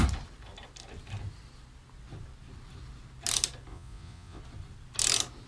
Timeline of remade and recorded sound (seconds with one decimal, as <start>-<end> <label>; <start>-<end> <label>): 0.0-3.7 recorded; 3.7-4.4 remade; 4.4-5.5 recorded